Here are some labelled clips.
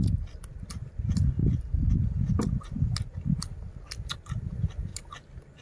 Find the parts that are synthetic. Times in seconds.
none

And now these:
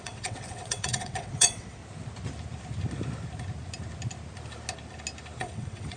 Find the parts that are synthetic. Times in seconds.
0.0-1.8 (vocoder, WaveNeXt); 5.4-6.0

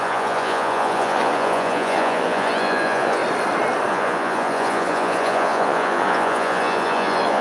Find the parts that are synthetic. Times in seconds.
0.0-3.2 (vocoder, Vocos); 3.9-7.4

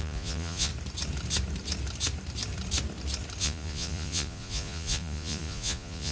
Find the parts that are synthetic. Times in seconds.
0.0-0.7 (vocoder, Vocos); 3.4-6.1

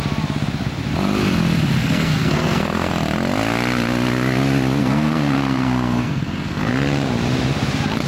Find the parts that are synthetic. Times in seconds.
1.8-2.9 (codec, SNAC); 4.8-6.7